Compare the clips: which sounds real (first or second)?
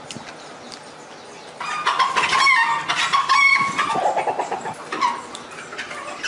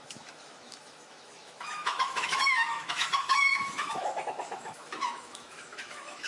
first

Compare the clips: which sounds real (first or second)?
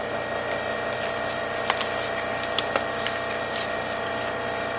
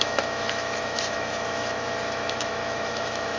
first